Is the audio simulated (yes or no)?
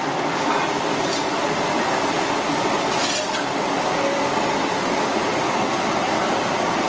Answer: no